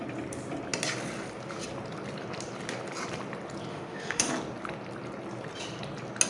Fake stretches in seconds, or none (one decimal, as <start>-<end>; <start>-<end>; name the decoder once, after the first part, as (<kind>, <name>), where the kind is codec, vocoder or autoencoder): 3.7-4.3 (autoencoder, DAC-VAE)